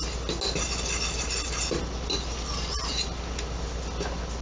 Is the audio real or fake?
real